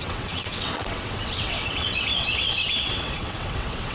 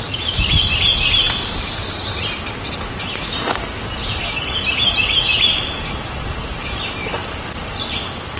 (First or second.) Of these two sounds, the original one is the second